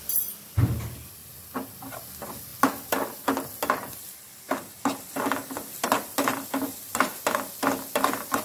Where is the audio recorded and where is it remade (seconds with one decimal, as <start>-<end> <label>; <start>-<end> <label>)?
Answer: 0.0-2.5 recorded; 2.5-7.2 remade; 7.2-8.4 recorded

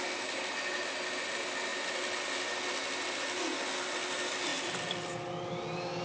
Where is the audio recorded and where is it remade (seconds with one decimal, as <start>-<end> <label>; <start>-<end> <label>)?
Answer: 0.0-4.5 recorded; 4.5-5.3 remade; 5.3-6.0 recorded

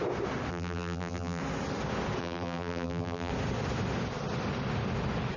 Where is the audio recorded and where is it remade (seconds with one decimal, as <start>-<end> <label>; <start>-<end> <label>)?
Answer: 0.0-0.5 recorded; 0.5-1.4 remade; 1.4-2.2 recorded; 2.2-3.3 remade; 3.3-5.4 recorded

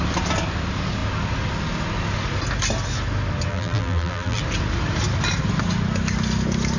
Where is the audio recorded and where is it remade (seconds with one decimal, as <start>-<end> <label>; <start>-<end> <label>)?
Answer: 0.0-3.5 recorded; 3.5-4.4 remade; 4.4-6.8 recorded

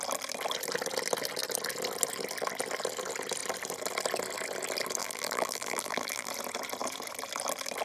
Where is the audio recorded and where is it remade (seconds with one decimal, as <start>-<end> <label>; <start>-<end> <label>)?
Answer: 0.0-5.0 recorded; 5.0-6.3 remade; 6.3-7.8 recorded

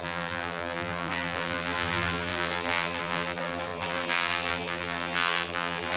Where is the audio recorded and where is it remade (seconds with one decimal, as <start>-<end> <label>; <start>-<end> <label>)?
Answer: 0.0-6.0 remade

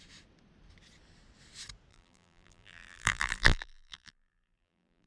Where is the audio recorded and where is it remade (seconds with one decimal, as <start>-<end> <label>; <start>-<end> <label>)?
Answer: 0.0-1.9 recorded; 1.9-5.1 remade

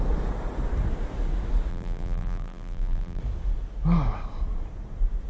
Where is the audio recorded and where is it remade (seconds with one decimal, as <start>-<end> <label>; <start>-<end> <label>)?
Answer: 0.0-1.7 recorded; 1.7-3.2 remade; 3.2-5.3 recorded